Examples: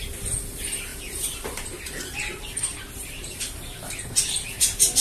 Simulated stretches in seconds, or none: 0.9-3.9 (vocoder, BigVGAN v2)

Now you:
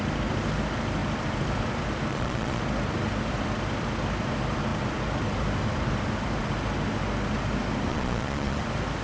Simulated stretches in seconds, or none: 2.1-2.6 (vocoder, Vocos); 7.9-8.6

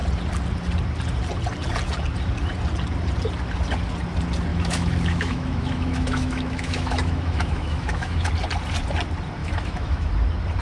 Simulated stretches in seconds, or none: 4.5-8.3 (autoencoder, DAC-VAE); 9.4-10.1